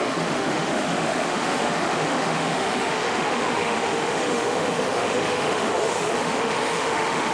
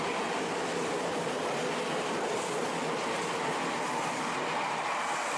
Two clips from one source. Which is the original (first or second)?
second